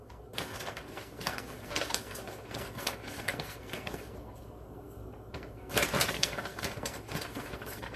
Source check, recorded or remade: remade